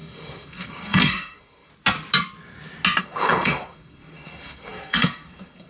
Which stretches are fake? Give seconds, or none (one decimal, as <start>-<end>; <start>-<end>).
0.0-1.7; 3.0-5.7